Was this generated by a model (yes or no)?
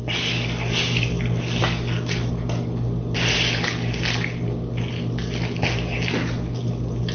no